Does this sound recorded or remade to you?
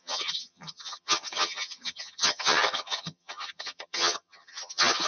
remade